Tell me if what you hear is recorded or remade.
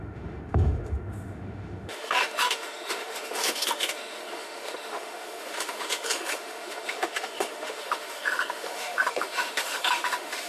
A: remade